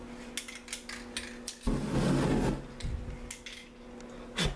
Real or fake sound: real